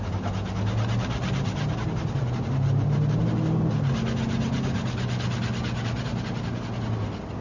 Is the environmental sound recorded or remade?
recorded